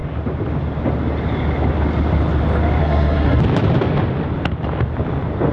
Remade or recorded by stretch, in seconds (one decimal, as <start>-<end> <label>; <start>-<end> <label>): 0.0-2.8 recorded; 2.8-3.4 remade; 3.4-5.5 recorded